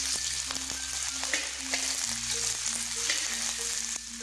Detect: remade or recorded recorded